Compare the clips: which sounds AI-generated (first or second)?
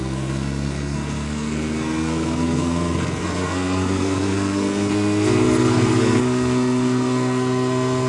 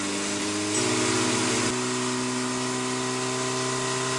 first